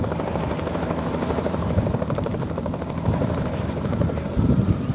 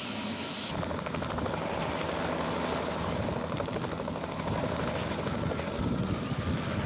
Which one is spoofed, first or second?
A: first